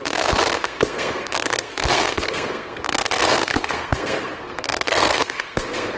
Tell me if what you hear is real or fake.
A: fake